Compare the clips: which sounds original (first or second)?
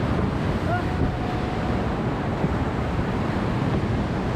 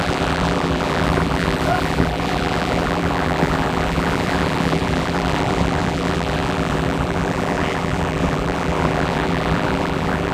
first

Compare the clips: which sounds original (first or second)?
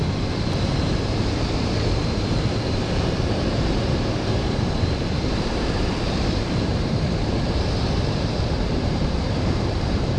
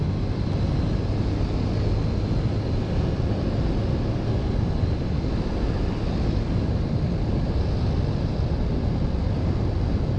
second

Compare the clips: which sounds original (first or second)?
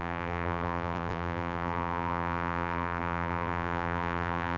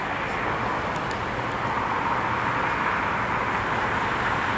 second